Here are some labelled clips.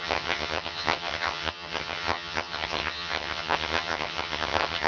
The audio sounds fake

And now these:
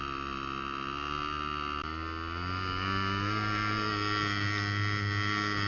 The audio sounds real